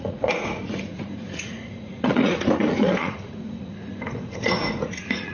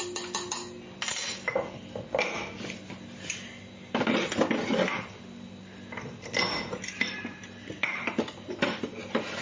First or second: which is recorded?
second